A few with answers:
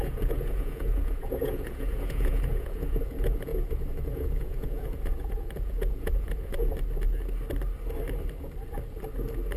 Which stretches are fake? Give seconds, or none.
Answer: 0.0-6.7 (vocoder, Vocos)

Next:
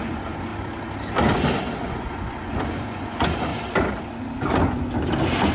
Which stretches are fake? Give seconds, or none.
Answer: 0.0-0.5 (vocoder, Vocos); 1.8-3.5

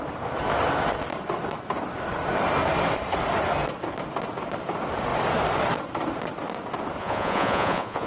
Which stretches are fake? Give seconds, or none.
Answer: 7.0-8.1 (vocoder, Vocos)

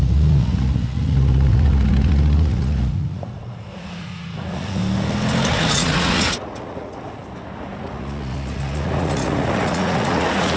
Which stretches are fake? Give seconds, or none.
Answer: 0.0-4.8 (vocoder, Vocos); 5.5-7.2; 7.8-10.6

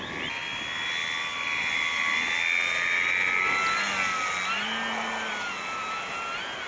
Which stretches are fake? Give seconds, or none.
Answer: none

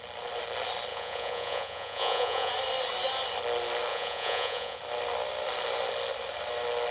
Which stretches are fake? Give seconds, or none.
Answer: 0.9-2.5 (vocoder, Vocos); 3.9-4.8

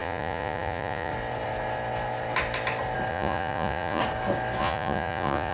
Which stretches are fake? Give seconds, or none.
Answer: 0.0-1.1 (vocoder, Vocos); 3.1-4.0; 4.6-5.5